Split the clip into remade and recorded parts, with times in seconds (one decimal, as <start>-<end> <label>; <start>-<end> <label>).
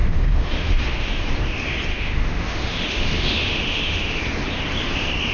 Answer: 0.0-1.3 remade; 1.3-1.9 recorded; 1.9-4.2 remade; 4.2-5.3 recorded